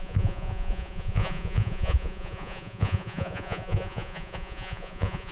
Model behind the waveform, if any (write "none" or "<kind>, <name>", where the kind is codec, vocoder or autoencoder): vocoder, Vocos